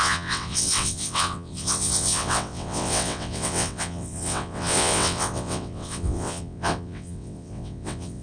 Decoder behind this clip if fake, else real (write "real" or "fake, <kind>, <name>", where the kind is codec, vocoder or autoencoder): fake, vocoder, WaveNeXt